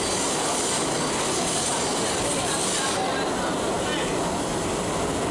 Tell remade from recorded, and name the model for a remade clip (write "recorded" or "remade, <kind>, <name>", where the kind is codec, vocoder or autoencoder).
recorded